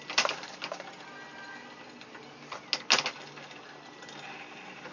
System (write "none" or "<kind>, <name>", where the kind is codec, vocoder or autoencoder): none